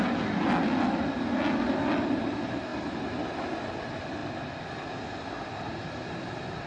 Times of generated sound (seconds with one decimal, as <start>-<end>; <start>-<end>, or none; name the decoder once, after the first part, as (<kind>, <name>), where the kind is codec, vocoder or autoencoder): none